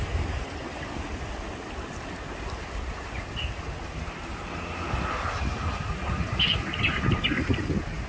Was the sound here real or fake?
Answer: real